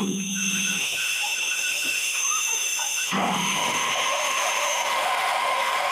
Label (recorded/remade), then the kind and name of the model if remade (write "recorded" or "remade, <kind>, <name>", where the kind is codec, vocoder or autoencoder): remade, autoencoder, DAC-VAE